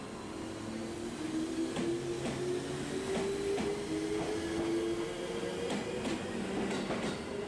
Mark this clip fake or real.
real